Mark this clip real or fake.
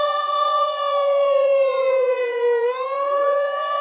fake